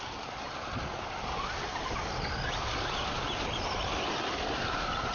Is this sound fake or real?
real